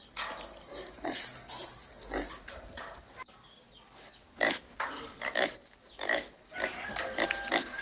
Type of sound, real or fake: real